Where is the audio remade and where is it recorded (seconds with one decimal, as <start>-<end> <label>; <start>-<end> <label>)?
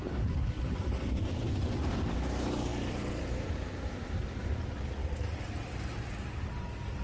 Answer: 0.0-7.0 remade